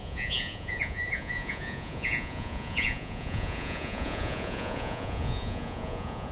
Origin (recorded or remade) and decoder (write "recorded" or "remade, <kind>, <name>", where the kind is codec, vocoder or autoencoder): remade, vocoder, Vocos